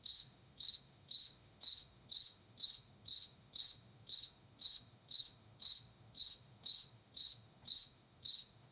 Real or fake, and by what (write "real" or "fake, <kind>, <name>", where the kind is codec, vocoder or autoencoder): fake, autoencoder, DAC-VAE